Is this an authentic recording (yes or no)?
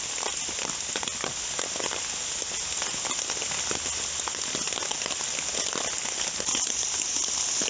yes